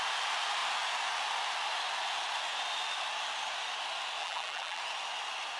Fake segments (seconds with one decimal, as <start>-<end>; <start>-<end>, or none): 4.2-4.8